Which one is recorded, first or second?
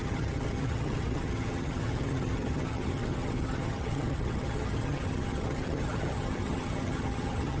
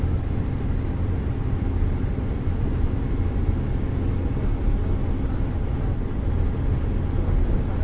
second